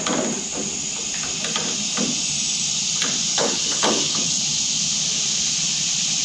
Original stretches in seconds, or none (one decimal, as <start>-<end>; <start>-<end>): 0.0-3.3; 4.4-6.2